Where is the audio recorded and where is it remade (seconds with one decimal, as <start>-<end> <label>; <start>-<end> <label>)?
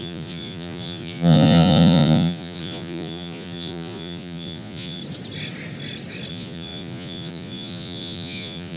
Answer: 0.0-5.0 remade; 5.0-6.3 recorded; 6.3-8.8 remade